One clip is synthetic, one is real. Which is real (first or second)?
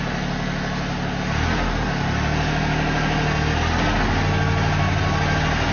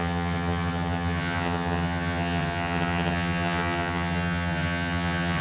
first